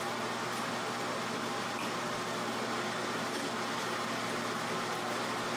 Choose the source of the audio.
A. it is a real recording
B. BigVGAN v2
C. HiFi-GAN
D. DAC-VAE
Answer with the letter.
A